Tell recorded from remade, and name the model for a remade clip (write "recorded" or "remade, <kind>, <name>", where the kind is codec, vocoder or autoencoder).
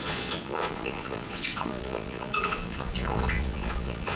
remade, vocoder, Vocos